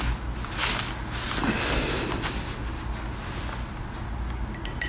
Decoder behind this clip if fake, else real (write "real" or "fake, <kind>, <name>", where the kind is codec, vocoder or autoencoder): real